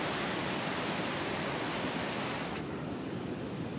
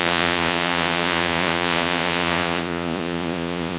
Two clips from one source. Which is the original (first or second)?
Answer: first